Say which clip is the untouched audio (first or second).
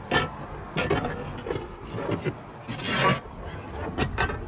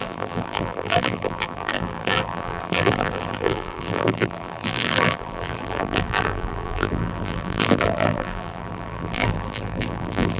first